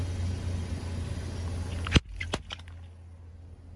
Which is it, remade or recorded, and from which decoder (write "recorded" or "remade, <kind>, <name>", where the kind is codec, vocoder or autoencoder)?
recorded